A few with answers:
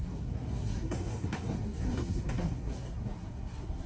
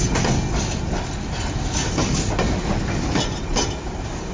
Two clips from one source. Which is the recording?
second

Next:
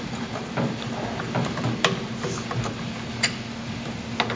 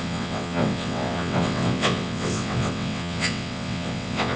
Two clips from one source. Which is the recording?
first